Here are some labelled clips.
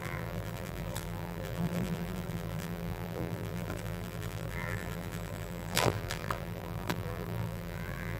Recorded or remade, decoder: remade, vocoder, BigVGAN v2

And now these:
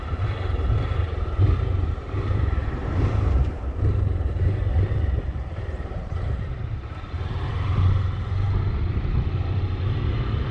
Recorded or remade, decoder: remade, vocoder, BigVGAN v2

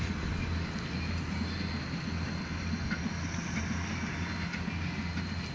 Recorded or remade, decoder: recorded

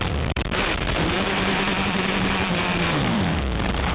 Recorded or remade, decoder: remade, vocoder, BigVGAN v2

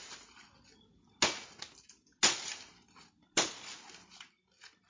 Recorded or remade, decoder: recorded